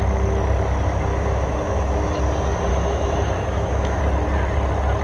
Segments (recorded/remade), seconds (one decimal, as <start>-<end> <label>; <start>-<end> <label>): 0.0-1.1 recorded; 1.1-2.2 remade; 2.2-2.7 recorded; 2.7-4.0 remade; 4.0-5.0 recorded